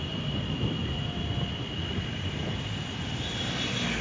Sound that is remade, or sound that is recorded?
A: recorded